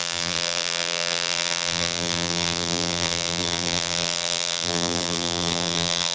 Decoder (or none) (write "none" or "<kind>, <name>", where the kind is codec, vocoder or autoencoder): vocoder, BigVGAN v2